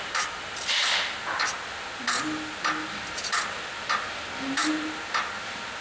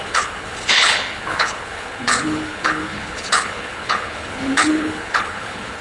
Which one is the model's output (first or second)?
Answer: second